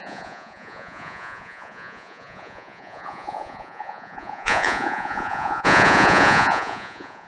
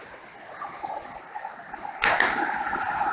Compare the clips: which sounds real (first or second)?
second